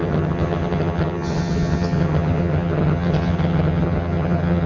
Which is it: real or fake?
fake